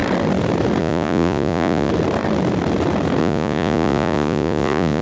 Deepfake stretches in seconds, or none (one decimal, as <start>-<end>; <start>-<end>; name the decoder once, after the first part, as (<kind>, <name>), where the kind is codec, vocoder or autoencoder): 0.8-1.9 (vocoder, Vocos); 3.2-5.0